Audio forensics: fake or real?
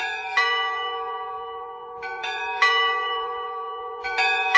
fake